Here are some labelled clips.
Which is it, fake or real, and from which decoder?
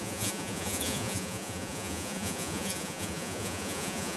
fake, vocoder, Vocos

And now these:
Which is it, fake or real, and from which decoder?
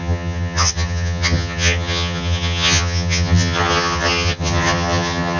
fake, vocoder, HiFi-GAN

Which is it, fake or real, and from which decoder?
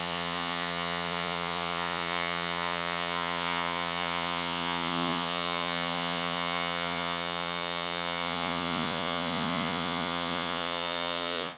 fake, vocoder, Vocos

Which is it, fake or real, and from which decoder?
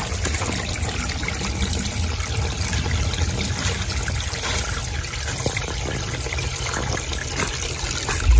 real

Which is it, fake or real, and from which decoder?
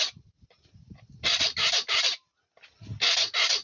real